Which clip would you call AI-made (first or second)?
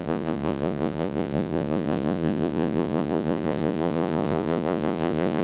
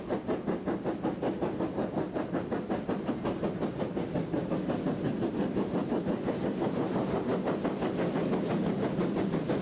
first